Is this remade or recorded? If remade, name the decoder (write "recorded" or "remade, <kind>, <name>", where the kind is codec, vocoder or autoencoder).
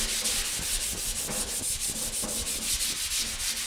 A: recorded